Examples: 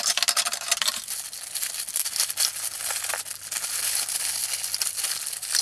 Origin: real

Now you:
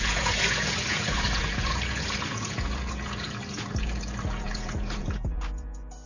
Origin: fake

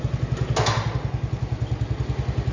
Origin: real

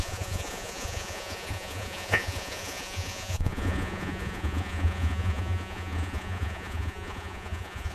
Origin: fake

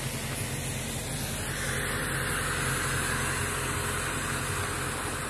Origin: real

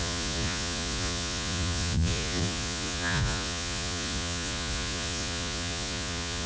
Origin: fake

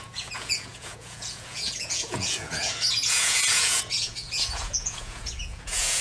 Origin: fake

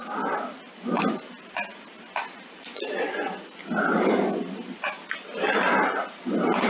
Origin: real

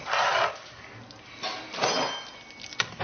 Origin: real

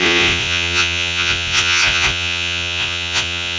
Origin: fake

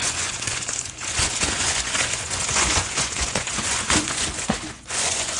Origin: fake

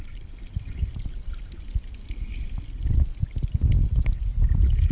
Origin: real